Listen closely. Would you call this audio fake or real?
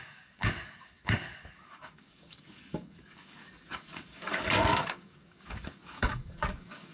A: fake